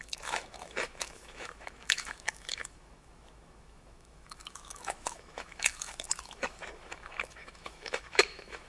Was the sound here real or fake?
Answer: fake